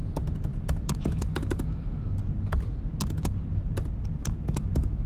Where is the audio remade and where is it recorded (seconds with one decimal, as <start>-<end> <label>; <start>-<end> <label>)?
0.0-0.5 recorded; 0.5-2.0 remade; 2.0-4.2 recorded; 4.2-5.1 remade